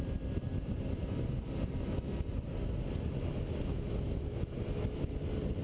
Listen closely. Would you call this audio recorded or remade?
recorded